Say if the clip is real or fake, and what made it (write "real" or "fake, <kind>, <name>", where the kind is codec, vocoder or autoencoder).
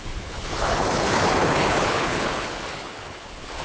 fake, codec, HILCodec